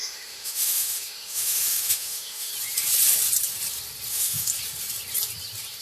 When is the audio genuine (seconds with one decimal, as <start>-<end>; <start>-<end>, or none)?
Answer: 2.5-4.1; 4.5-5.8